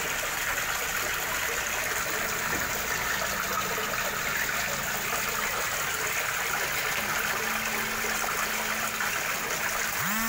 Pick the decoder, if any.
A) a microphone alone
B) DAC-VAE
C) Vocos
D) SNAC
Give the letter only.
A